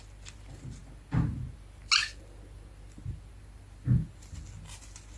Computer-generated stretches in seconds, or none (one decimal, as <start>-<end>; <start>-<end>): none